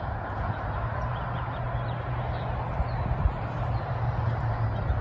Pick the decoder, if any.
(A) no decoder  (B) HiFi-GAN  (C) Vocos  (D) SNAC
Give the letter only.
A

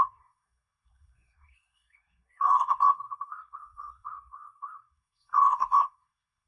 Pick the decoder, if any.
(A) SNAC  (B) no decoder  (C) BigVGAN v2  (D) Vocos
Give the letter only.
A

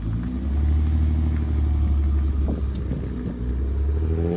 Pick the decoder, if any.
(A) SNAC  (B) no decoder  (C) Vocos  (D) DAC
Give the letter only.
B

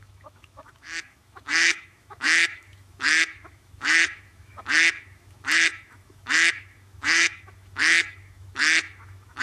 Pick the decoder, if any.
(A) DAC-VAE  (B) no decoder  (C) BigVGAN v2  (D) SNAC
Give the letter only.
A